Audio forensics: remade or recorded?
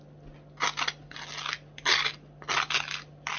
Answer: recorded